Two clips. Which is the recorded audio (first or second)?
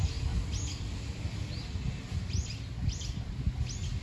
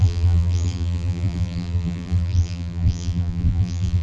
first